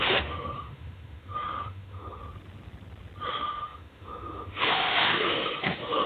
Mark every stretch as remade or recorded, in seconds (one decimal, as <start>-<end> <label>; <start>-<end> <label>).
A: 0.0-2.2 remade; 2.2-3.3 recorded; 3.3-6.1 remade